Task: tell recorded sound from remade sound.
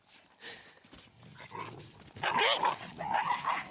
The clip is recorded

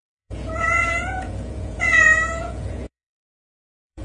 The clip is remade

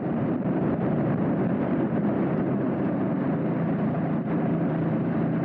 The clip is remade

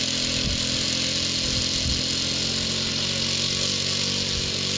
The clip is recorded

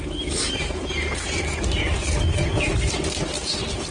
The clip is recorded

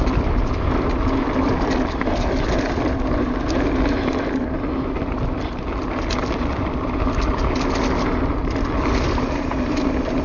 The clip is recorded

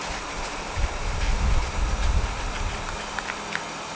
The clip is recorded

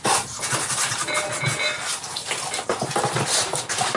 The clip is recorded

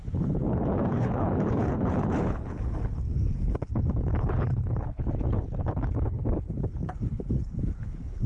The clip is remade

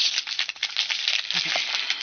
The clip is recorded